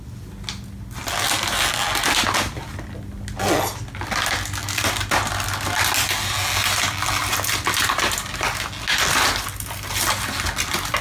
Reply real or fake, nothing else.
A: real